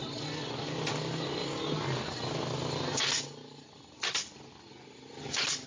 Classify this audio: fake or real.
real